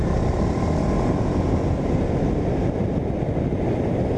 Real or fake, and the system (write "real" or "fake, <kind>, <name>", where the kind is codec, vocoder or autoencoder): real